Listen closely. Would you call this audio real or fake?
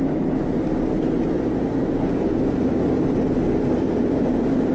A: real